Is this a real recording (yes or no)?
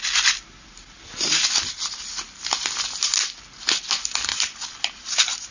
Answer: yes